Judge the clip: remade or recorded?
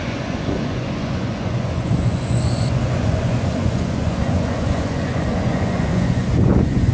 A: remade